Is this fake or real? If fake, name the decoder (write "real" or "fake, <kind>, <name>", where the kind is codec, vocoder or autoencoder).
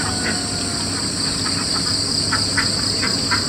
real